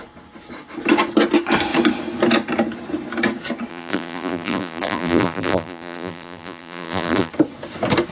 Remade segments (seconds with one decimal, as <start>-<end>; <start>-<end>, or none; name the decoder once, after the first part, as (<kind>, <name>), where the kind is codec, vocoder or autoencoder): 3.7-7.3 (vocoder, BigVGAN v2)

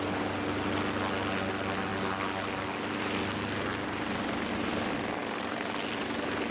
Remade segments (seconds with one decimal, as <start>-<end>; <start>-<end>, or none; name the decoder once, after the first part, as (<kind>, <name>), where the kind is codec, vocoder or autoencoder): none